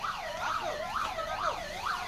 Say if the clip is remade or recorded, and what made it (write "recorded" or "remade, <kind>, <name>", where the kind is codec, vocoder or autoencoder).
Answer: recorded